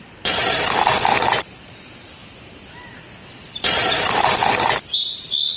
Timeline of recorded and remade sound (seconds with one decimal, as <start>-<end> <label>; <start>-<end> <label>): 0.0-5.6 recorded